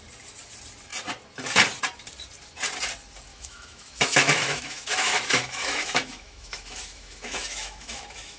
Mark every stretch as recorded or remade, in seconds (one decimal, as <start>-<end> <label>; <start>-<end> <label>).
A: 0.0-3.3 recorded; 3.3-8.4 remade